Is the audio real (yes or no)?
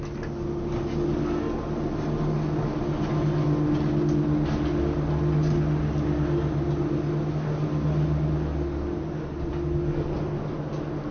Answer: yes